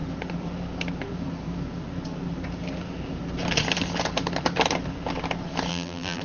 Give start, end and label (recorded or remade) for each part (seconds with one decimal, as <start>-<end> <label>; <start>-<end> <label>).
0.0-5.7 recorded; 5.7-6.2 remade